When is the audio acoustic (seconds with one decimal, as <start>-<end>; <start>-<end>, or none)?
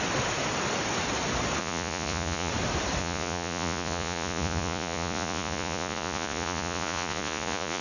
0.0-1.6; 2.5-3.0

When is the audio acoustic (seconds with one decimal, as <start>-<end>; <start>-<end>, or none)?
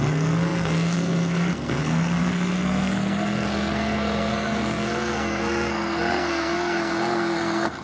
none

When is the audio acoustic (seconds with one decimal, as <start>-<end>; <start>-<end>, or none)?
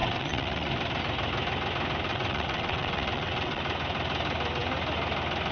0.7-2.1; 3.6-5.5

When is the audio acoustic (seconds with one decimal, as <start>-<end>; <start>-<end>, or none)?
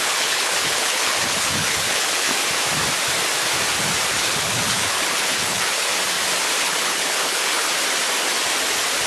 2.3-4.1; 5.9-6.6; 7.7-9.1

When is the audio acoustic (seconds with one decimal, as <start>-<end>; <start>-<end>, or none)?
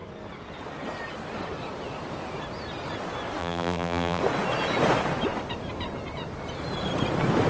0.0-3.4; 4.2-7.5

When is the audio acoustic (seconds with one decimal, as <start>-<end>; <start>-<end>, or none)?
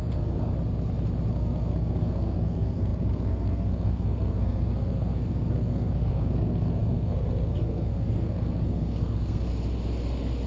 0.5-1.3; 9.5-10.5